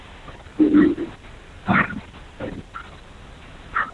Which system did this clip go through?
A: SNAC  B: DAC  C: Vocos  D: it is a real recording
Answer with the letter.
D